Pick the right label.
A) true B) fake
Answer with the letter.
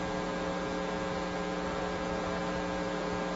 A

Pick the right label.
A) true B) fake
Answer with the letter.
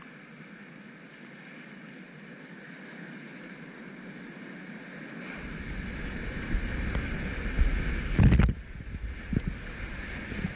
A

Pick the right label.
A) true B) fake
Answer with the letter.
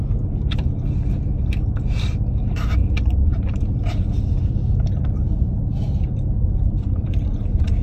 B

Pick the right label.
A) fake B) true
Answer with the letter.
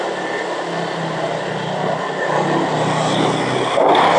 B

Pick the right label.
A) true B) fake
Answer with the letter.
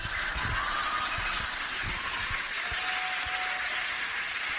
A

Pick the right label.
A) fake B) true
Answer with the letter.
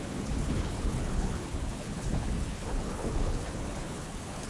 A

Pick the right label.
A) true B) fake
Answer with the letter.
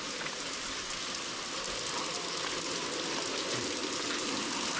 A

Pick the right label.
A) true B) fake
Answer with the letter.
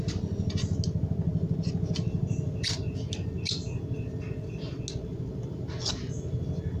A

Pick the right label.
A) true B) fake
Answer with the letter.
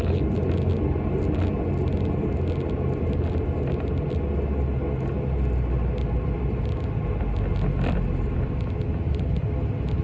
A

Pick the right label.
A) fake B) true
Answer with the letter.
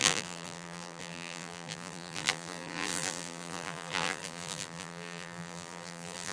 A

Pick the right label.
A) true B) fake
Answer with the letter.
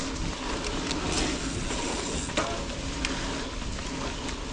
A